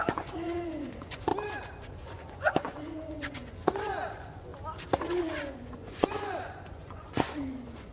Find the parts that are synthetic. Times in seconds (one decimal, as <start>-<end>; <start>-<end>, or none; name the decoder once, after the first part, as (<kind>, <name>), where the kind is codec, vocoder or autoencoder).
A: 0.0-1.3 (vocoder, Vocos); 1.8-4.5; 5.2-7.9